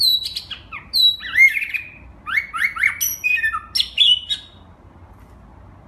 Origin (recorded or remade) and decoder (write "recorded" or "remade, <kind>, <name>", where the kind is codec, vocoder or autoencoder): recorded